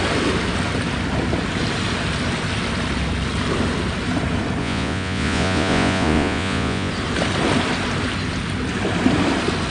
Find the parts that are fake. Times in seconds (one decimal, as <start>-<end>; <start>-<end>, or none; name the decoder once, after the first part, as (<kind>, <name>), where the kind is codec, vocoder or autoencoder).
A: 4.6-6.9 (vocoder, Vocos)